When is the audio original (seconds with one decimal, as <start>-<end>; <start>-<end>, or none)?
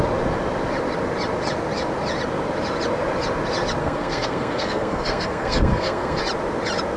0.0-3.8; 6.2-7.0